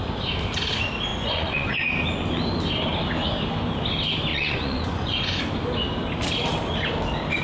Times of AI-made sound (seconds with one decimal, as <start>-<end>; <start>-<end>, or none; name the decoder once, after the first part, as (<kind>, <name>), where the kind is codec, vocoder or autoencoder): 1.1-1.8 (vocoder, Vocos); 4.3-5.4